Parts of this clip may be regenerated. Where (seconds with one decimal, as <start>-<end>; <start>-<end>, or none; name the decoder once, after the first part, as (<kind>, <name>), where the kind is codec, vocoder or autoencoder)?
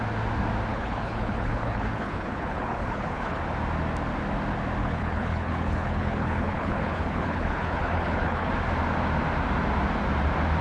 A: 0.7-3.4 (codec, HILCodec); 4.8-8.5